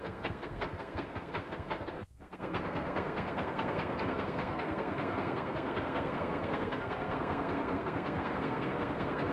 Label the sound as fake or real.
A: fake